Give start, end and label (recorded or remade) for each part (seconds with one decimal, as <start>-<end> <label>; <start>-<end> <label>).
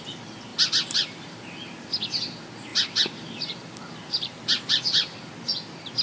0.0-0.5 recorded; 0.5-1.8 remade; 1.8-2.7 recorded; 2.7-5.3 remade; 5.3-6.0 recorded